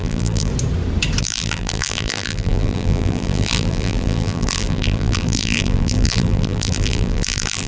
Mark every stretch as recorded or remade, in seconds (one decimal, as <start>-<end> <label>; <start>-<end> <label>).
0.0-0.5 remade; 0.5-1.2 recorded; 1.2-7.7 remade